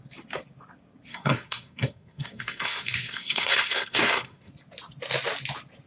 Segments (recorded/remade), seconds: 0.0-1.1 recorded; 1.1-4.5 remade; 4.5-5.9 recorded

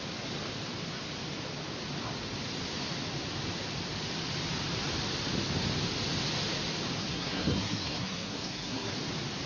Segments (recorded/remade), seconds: 0.0-7.0 recorded; 7.0-8.9 remade; 8.9-9.5 recorded